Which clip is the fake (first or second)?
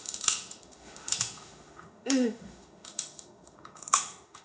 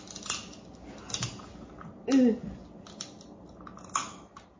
first